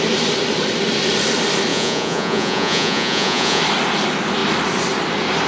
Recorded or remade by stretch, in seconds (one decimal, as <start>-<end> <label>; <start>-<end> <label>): 0.0-1.7 recorded; 1.7-3.6 remade; 3.6-5.5 recorded